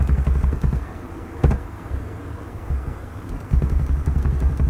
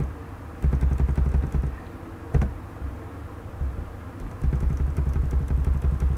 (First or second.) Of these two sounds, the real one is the second